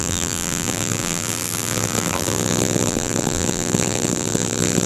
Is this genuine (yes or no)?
no